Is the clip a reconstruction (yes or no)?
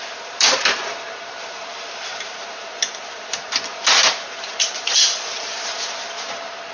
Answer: yes